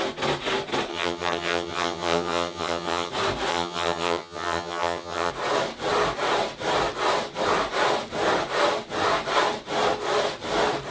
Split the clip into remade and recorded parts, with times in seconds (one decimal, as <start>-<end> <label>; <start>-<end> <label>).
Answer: 0.0-0.9 recorded; 0.9-3.1 remade; 3.1-3.5 recorded; 3.5-5.3 remade; 5.3-10.9 recorded